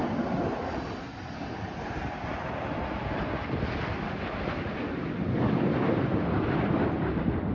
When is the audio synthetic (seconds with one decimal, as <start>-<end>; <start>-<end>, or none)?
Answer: none